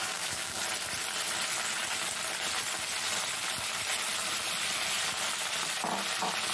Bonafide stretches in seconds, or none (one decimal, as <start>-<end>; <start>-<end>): 0.6-6.5